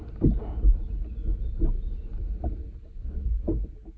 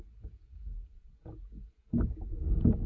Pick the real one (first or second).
first